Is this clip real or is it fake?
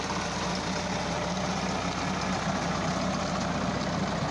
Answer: real